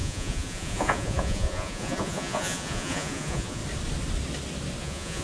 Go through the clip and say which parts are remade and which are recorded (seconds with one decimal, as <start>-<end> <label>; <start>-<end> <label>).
0.0-3.6 remade; 3.6-4.8 recorded; 4.8-5.2 remade